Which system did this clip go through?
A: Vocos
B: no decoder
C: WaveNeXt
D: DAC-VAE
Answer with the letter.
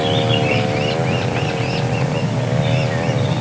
B